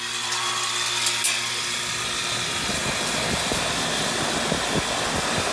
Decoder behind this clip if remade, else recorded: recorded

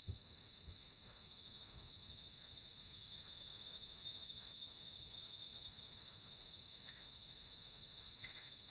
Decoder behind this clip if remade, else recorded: remade, autoencoder, DAC-VAE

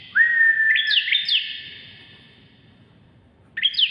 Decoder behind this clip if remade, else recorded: recorded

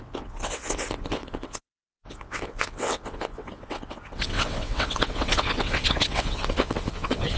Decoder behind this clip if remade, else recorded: remade, vocoder, WaveNeXt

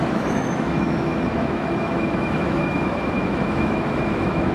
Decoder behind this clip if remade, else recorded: remade, autoencoder, DAC-VAE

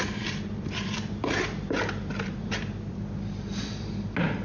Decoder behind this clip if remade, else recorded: remade, vocoder, BigVGAN v2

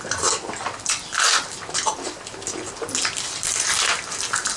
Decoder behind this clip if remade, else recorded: recorded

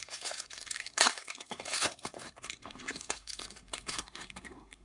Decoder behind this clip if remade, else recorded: remade, codec, SNAC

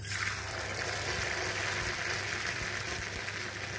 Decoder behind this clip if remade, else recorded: recorded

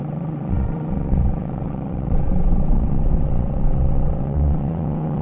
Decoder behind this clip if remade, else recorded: remade, vocoder, WaveNeXt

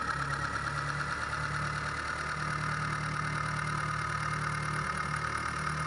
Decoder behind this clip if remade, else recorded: recorded